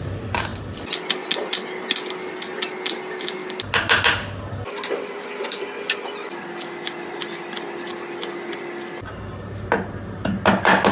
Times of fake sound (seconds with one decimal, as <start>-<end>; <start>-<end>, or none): none